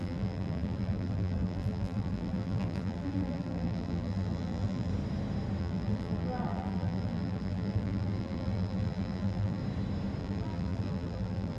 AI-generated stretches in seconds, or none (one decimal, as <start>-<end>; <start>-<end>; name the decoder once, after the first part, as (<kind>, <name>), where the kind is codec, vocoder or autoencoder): 0.0-4.9 (vocoder, BigVGAN v2); 5.6-9.6; 10.2-11.6

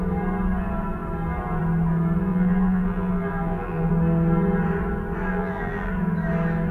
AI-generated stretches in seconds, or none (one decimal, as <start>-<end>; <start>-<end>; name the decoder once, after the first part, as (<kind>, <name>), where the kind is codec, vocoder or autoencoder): 2.3-3.9 (vocoder, BigVGAN v2); 5.3-5.9

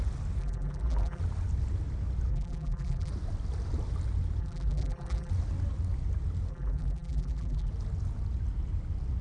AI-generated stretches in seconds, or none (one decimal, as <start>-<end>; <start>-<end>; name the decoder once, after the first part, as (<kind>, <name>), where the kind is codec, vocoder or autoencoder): 0.4-1.2 (vocoder, BigVGAN v2); 2.3-3.1; 4.4-5.3; 6.5-7.7

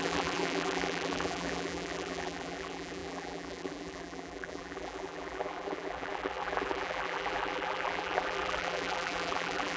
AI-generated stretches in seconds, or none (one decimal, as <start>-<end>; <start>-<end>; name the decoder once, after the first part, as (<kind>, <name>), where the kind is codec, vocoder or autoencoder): 0.0-9.8 (vocoder, BigVGAN v2)

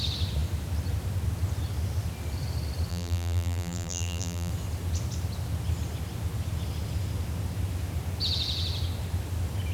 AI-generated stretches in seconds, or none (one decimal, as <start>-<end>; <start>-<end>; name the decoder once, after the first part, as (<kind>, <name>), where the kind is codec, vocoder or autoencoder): 2.9-4.5 (vocoder, BigVGAN v2)

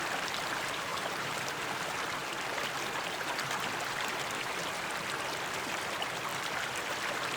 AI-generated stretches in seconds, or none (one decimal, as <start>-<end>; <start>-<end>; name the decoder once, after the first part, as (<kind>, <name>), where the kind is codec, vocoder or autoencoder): 0.9-1.5 (vocoder, BigVGAN v2)

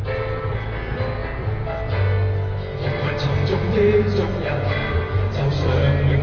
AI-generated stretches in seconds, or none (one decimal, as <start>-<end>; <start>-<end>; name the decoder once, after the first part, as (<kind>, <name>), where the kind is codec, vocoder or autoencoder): none